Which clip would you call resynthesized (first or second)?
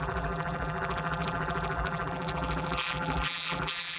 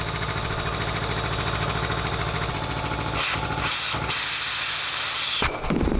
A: first